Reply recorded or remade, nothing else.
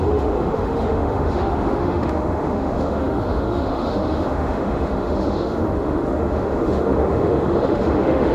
remade